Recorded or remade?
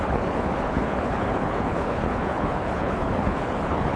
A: remade